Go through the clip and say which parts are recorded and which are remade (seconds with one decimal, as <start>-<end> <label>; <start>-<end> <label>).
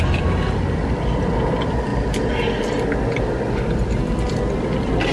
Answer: 0.0-5.1 recorded